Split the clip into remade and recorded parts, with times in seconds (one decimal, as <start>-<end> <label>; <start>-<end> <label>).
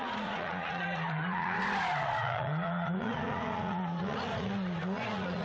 0.0-5.4 remade